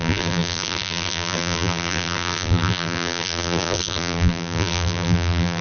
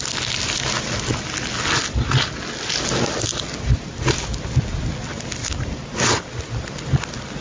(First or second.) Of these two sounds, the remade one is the first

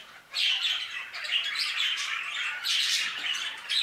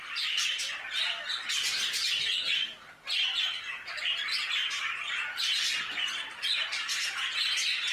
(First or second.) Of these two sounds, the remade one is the first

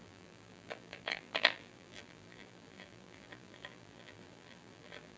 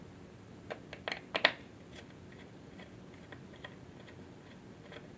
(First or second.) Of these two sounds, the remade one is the first